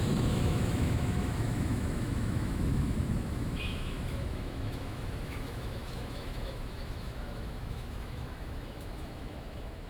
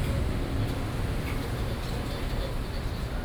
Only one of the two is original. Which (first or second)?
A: second